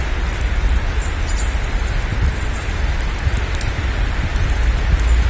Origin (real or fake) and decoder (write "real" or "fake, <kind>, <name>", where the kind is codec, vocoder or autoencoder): real